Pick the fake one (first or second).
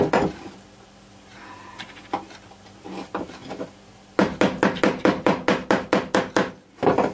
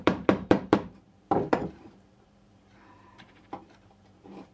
second